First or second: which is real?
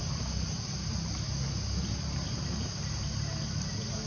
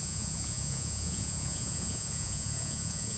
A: first